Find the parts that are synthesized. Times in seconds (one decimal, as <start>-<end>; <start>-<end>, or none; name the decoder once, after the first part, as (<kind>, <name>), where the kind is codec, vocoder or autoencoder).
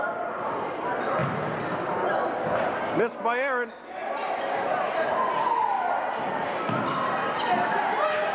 none